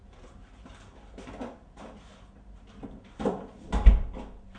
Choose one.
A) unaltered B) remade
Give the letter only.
A